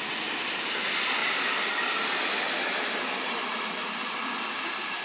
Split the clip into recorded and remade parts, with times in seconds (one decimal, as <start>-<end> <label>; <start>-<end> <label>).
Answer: 0.0-5.0 recorded